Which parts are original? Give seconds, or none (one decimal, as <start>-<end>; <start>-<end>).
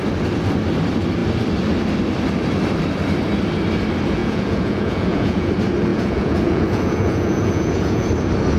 0.0-4.2; 5.5-5.9; 8.1-8.6